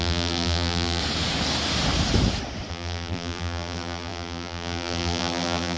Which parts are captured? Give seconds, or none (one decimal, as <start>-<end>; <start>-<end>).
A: 1.0-2.7